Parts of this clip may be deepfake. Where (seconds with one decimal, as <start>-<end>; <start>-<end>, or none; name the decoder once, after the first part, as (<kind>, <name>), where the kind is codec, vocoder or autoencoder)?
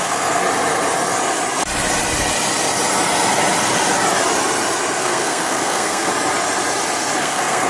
0.0-0.4 (codec, SNAC); 5.0-6.1; 7.2-7.7